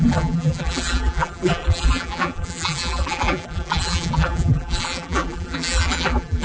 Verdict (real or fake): fake